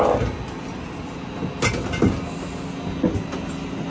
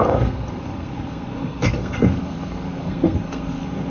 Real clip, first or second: first